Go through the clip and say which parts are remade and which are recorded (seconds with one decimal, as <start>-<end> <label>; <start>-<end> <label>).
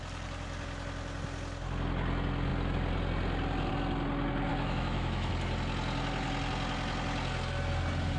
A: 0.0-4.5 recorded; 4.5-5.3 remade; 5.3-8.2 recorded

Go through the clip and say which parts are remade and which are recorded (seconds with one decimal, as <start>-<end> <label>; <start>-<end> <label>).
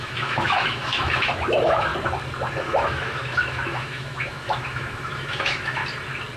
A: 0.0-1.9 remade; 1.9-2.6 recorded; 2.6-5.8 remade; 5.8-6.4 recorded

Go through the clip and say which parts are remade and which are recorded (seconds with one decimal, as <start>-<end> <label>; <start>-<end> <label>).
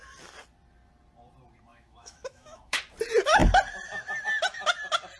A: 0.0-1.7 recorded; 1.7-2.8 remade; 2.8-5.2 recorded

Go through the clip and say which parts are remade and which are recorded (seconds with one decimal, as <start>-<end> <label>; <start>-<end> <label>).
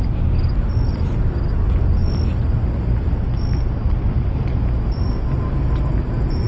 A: 0.0-6.5 recorded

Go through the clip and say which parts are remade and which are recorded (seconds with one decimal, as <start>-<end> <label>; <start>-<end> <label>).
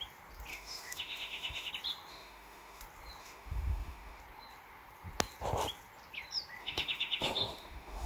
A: 0.0-0.5 recorded; 0.5-1.7 remade; 1.7-2.1 recorded; 2.1-2.8 remade; 2.8-3.2 recorded; 3.2-4.2 remade; 4.2-6.6 recorded; 6.6-8.1 remade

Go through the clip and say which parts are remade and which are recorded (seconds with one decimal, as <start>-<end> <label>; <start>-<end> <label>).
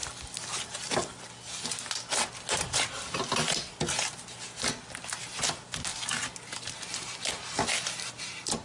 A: 0.0-8.6 recorded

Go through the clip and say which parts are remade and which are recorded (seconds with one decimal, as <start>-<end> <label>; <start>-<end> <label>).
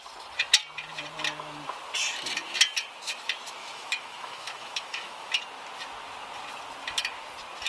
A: 0.0-3.6 recorded; 3.6-5.4 remade; 5.4-7.7 recorded